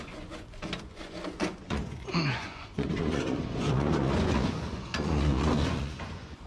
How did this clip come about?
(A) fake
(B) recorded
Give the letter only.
A